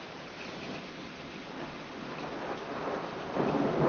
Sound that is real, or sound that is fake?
real